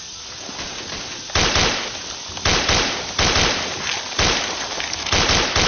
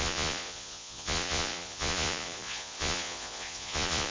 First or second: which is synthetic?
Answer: second